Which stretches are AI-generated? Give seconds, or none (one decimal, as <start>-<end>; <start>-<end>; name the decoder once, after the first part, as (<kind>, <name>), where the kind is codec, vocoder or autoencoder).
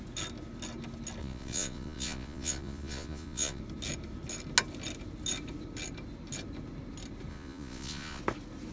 1.2-3.6 (vocoder, Vocos); 7.3-8.2